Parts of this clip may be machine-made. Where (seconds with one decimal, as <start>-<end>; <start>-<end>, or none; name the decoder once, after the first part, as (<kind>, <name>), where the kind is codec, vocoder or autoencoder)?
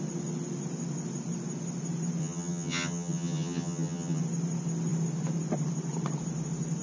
2.2-4.2 (vocoder, HiFi-GAN)